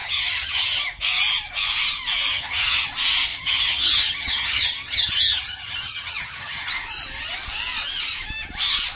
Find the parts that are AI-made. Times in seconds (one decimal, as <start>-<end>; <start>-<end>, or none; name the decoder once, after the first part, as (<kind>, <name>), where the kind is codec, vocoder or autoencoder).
0.0-0.8 (vocoder, HiFi-GAN); 2.3-2.9; 3.3-6.7